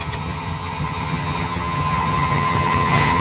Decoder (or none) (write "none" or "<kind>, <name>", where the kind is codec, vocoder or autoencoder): vocoder, HiFi-GAN